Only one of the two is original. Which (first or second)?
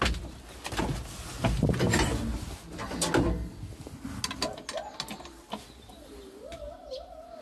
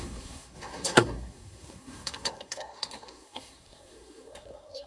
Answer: first